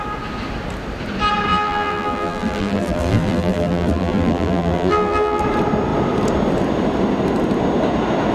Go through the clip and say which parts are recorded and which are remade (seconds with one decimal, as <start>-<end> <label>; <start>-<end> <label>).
0.0-1.5 recorded; 1.5-5.4 remade; 5.4-8.3 recorded